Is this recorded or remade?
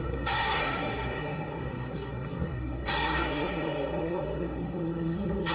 remade